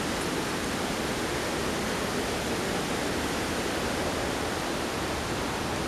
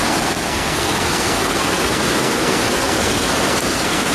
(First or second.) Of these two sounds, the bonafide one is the first